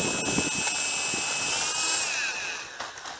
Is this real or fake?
real